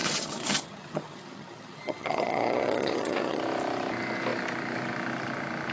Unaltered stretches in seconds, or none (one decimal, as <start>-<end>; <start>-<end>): 3.4-5.7